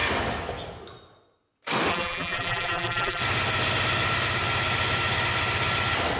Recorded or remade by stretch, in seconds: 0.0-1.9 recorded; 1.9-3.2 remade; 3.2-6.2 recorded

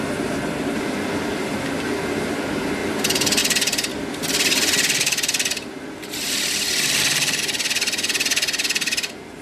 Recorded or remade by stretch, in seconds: 0.0-3.9 recorded; 3.9-7.4 remade; 7.4-9.4 recorded